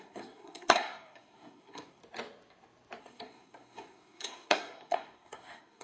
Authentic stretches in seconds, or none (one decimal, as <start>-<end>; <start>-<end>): 2.0-3.0

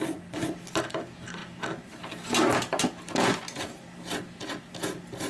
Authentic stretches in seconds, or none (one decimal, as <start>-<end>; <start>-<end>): 0.0-5.3

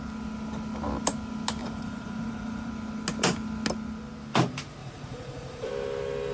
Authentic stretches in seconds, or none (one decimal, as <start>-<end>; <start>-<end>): 0.0-1.6; 2.7-4.8; 5.7-6.3

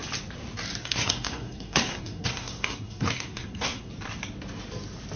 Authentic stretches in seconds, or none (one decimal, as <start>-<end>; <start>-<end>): 0.0-0.8; 3.9-5.2

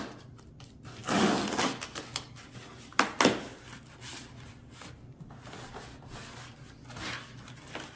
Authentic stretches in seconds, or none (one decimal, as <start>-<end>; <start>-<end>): 0.0-8.0

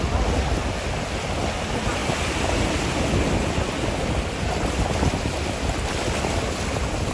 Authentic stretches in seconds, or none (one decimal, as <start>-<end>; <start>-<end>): 0.0-7.1